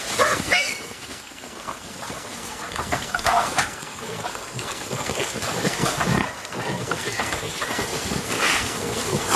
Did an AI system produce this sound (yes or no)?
yes